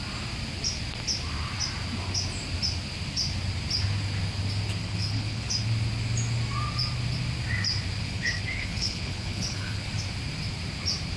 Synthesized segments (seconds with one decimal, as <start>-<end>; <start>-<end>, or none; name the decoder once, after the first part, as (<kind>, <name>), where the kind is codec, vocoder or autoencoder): 4.8-5.5 (codec, HILCodec); 8.0-9.9